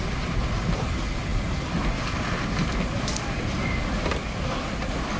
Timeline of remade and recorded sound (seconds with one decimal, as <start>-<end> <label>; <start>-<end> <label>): 0.0-5.2 recorded